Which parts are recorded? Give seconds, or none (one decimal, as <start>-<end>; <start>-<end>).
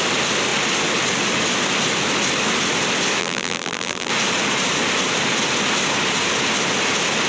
0.0-3.2; 4.1-7.3